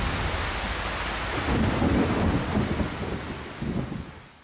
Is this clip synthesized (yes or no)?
no